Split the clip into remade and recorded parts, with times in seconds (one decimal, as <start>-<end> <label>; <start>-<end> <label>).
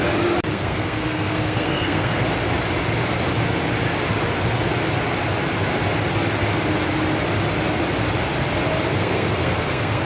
0.0-0.5 recorded; 0.5-2.2 remade; 2.2-9.0 recorded; 9.0-10.0 remade